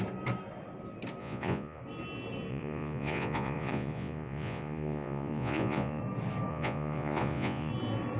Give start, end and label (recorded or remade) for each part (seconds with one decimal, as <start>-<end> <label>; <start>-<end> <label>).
0.0-1.2 recorded; 1.2-1.8 remade; 1.8-2.5 recorded; 2.5-6.0 remade; 6.0-6.5 recorded; 6.5-7.7 remade; 7.7-8.2 recorded